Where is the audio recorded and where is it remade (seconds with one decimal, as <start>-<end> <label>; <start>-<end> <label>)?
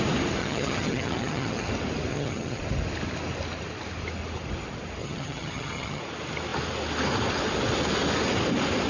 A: 0.0-0.4 recorded; 0.4-1.7 remade; 1.7-2.1 recorded; 2.1-2.6 remade; 2.6-5.0 recorded; 5.0-6.0 remade; 6.0-8.9 recorded